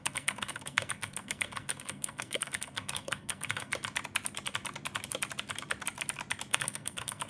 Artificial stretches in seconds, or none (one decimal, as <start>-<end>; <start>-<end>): 0.0-3.7; 6.5-7.3